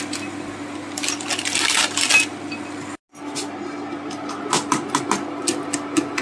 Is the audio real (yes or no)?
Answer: yes